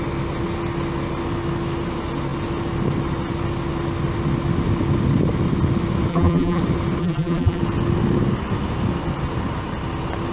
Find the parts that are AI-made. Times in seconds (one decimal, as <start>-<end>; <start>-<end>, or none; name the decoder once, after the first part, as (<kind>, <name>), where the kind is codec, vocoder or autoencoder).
6.1-6.6 (vocoder, BigVGAN v2); 7.0-7.6